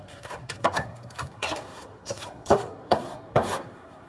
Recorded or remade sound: remade